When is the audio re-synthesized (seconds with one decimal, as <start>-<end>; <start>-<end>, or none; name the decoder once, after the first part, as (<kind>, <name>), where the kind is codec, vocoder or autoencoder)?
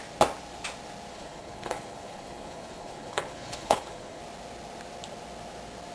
1.1-4.2 (codec, HILCodec)